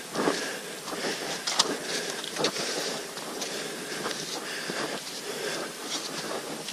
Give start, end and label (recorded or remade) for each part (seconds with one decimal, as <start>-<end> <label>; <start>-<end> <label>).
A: 0.0-1.8 recorded; 1.8-5.5 remade; 5.5-6.7 recorded